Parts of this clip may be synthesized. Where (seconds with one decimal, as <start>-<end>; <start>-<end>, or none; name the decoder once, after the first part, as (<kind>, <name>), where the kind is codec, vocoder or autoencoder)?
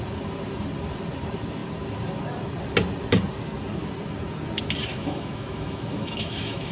4.9-6.7 (autoencoder, DAC-VAE)